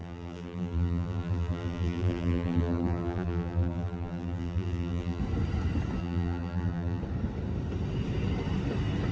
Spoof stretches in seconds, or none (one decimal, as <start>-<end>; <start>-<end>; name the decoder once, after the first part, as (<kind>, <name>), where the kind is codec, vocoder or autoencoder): 0.0-5.2 (vocoder, BigVGAN v2); 6.0-7.0